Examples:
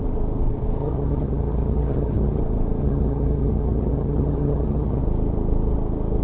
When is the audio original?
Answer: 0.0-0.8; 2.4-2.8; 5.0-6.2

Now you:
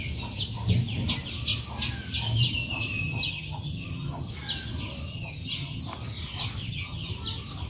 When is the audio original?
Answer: 0.0-3.0; 4.3-5.1; 5.8-6.6; 7.1-7.7

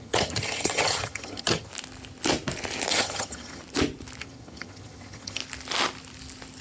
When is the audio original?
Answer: 1.7-2.9; 3.6-4.2; 5.4-6.6

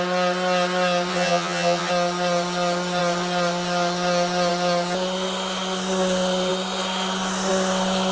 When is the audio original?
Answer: 0.0-1.1; 1.9-8.1